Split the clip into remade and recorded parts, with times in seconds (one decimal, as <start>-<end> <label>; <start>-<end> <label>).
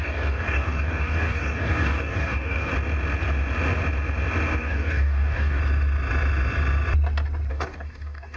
0.0-2.7 remade; 2.7-4.6 recorded; 4.6-5.6 remade; 5.6-7.5 recorded; 7.5-8.4 remade